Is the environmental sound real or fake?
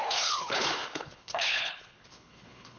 fake